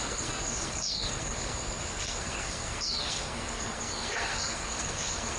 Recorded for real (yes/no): no